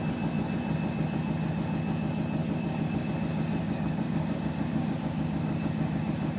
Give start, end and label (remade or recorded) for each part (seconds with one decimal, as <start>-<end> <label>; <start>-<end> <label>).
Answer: 0.0-2.4 recorded; 2.4-3.1 remade; 3.1-3.6 recorded; 3.6-6.0 remade; 6.0-6.4 recorded

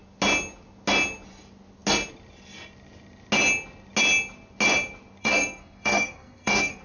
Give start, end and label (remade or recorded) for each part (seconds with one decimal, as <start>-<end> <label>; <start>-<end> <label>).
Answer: 0.0-5.2 recorded; 5.2-6.8 remade

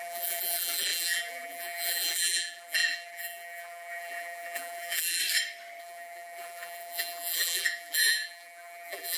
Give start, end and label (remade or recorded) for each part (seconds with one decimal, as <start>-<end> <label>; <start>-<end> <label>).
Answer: 0.0-5.2 remade; 5.2-5.8 recorded; 5.8-9.2 remade